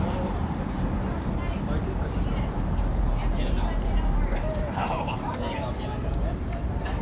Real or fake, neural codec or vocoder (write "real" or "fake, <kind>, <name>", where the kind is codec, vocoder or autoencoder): fake, vocoder, BigVGAN v2